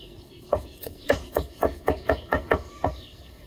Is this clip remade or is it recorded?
remade